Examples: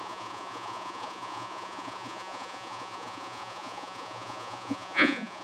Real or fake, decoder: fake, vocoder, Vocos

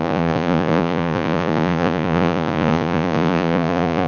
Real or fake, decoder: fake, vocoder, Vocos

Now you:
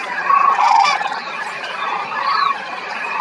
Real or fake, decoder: fake, vocoder, Vocos